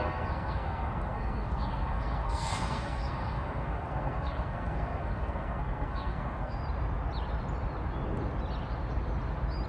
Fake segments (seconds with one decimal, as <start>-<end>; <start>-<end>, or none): 0.0-6.6